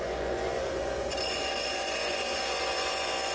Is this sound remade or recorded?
remade